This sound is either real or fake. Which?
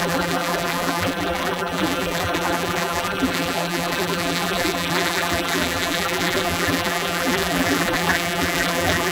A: fake